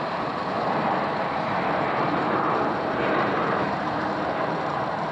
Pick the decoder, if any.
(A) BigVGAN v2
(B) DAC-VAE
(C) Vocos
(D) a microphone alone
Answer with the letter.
A